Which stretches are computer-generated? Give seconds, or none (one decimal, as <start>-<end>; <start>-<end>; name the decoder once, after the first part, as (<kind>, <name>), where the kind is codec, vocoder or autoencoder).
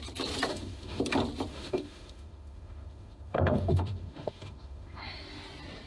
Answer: 0.5-1.0 (autoencoder, DAC-VAE); 1.5-5.0